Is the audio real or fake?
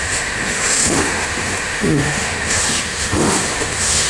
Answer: fake